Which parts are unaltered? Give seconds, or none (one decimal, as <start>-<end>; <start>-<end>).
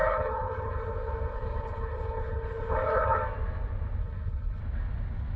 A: 3.2-4.0; 4.6-5.4